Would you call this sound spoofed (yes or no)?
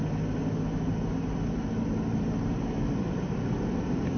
no